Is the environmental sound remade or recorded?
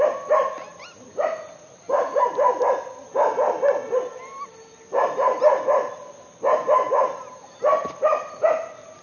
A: recorded